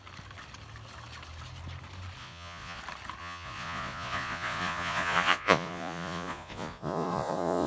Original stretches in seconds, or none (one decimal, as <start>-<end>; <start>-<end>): 0.0-2.2; 2.8-3.2